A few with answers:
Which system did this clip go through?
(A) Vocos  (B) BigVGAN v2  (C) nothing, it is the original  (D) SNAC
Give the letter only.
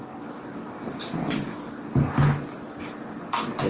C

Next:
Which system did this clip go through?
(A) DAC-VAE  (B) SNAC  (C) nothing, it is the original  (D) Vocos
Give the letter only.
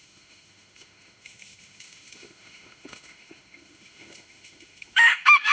A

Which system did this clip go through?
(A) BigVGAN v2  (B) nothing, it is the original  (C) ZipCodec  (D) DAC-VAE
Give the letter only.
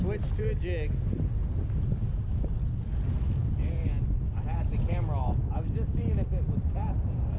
B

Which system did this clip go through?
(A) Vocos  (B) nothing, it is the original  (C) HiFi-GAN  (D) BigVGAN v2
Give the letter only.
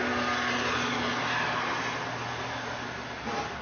B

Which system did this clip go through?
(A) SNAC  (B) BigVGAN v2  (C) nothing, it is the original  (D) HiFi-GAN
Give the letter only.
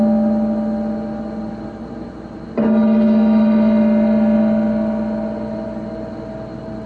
C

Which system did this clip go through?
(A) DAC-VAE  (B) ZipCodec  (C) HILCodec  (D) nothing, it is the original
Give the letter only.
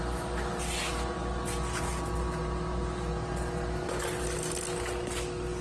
D